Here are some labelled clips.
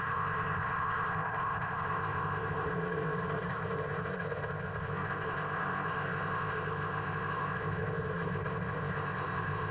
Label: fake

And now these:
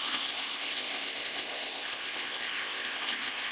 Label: fake